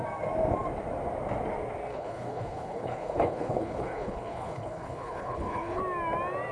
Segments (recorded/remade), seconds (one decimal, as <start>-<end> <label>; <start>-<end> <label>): 0.0-1.9 recorded; 1.9-5.8 remade; 5.8-6.5 recorded